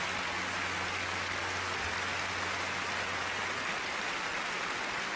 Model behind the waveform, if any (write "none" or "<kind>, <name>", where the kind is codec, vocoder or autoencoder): none